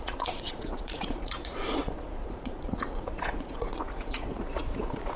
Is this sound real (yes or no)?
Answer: no